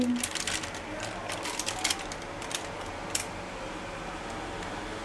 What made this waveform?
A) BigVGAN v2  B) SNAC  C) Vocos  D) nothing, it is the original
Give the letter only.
D